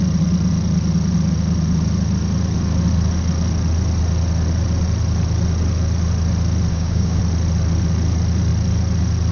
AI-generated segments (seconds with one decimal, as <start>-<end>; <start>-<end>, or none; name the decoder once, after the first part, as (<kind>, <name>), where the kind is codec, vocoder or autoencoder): 6.7-7.2 (codec, DAC)